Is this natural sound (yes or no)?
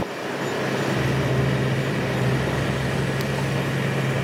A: yes